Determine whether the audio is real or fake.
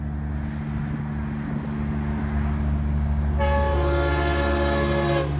real